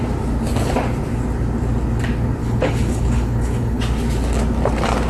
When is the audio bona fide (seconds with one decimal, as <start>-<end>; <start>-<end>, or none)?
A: 0.0-2.4; 3.8-5.1